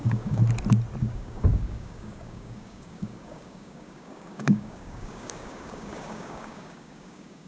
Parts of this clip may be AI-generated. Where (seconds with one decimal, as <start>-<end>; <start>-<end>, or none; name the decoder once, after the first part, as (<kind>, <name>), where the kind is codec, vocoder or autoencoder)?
0.0-0.4 (codec, DAC); 1.0-7.5